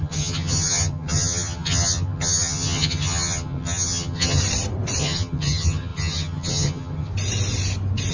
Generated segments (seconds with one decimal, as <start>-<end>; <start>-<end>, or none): 0.0-4.4; 5.0-7.1